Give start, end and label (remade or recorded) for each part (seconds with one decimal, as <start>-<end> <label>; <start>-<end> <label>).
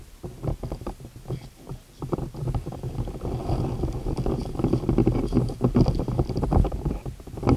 0.0-7.6 recorded